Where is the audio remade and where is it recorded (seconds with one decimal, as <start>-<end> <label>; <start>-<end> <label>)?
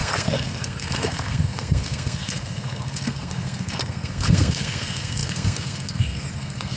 0.0-6.8 remade